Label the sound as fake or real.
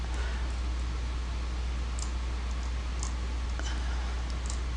real